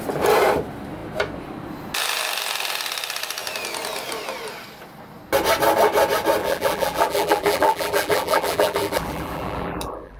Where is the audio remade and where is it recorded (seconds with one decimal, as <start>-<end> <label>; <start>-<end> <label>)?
0.0-6.4 recorded; 6.4-10.2 remade